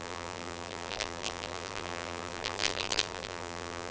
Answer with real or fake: fake